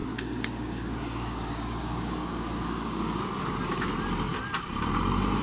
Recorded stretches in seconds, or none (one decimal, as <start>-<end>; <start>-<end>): 3.2-5.4